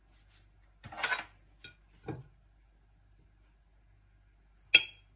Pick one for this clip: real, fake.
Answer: real